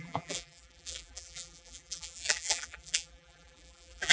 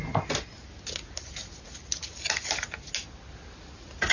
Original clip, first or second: second